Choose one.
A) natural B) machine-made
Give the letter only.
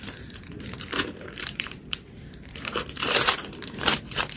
B